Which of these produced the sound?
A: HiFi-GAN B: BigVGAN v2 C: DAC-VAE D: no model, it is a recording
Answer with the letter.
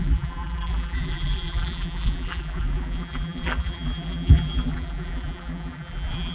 B